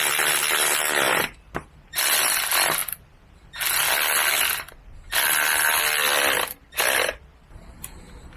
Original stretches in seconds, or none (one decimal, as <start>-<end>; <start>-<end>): 0.0-8.4